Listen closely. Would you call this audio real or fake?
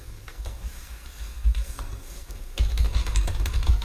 fake